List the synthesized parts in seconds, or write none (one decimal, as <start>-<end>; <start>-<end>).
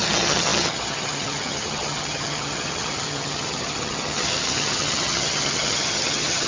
0.0-6.5